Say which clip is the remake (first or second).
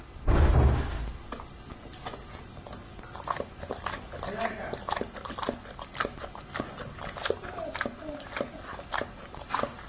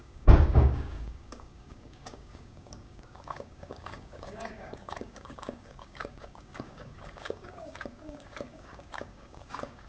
second